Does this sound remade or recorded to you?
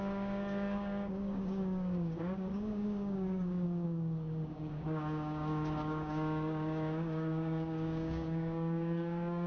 remade